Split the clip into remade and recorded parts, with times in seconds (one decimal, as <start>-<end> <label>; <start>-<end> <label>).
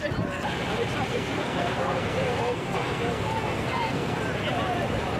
0.0-1.1 recorded; 1.1-4.2 remade; 4.2-5.2 recorded